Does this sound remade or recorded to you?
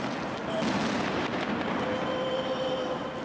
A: recorded